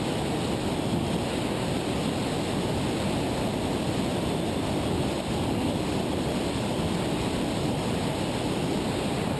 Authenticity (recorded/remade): recorded